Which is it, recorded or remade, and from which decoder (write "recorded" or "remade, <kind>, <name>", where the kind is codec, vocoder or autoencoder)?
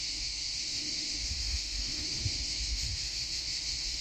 remade, autoencoder, DAC-VAE